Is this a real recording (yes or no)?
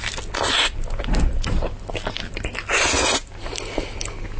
yes